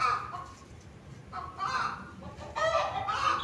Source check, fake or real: real